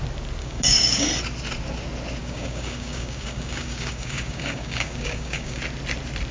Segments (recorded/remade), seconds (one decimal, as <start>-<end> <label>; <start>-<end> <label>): 0.0-0.4 recorded; 0.4-1.1 remade; 1.1-2.2 recorded; 2.2-5.6 remade; 5.6-6.3 recorded